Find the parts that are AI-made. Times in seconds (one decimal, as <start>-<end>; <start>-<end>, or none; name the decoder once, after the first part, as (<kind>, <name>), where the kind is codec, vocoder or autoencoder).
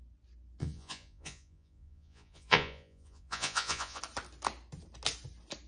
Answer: 0.6-4.0 (vocoder, Vocos)